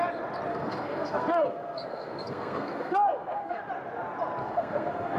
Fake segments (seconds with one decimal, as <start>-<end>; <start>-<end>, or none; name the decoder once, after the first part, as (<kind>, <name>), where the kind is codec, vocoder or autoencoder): 0.5-3.6 (codec, SNAC); 4.4-5.2